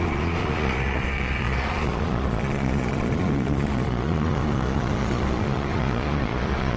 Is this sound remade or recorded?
remade